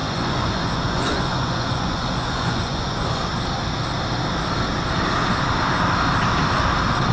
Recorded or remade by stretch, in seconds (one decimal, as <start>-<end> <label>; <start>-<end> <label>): 0.0-3.3 remade; 3.3-7.1 recorded